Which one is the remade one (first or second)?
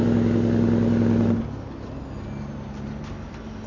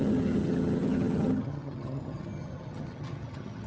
second